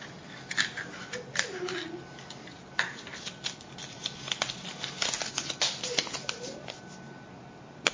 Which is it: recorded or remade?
recorded